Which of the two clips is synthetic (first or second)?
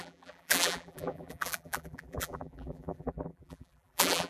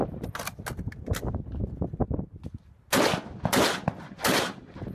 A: first